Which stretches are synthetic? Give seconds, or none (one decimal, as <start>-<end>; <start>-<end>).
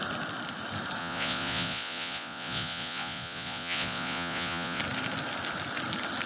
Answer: 1.0-4.8